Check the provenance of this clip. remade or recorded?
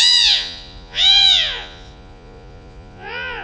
remade